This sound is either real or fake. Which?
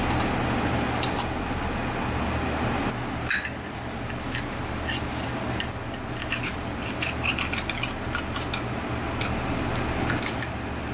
real